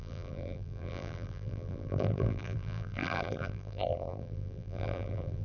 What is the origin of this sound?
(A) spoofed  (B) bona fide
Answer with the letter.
A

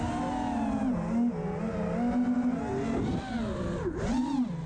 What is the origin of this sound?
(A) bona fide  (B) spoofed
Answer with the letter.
A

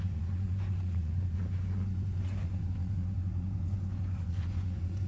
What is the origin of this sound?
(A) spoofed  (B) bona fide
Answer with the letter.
A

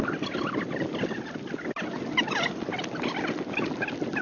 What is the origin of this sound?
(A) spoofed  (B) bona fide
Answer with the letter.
B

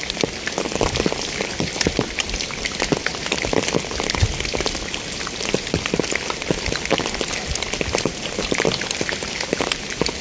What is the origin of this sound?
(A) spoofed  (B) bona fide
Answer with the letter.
B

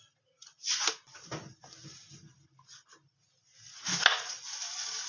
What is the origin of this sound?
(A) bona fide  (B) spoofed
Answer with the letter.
A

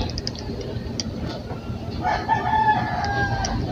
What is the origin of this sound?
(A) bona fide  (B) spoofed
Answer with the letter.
A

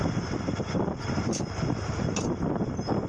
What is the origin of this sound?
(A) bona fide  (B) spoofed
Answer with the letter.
A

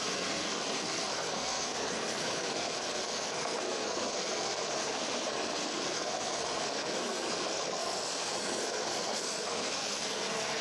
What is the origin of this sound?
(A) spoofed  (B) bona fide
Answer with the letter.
A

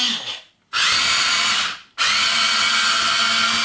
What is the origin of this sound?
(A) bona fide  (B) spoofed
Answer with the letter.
A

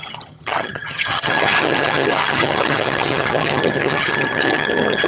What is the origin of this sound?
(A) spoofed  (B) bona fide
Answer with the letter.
A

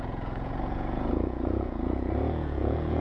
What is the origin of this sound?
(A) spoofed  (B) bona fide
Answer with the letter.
A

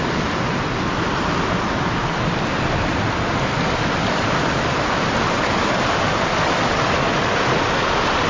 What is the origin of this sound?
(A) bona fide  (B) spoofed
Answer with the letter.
A